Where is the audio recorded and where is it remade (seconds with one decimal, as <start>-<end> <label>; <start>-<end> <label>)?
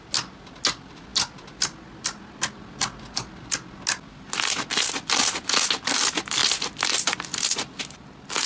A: 0.0-8.5 recorded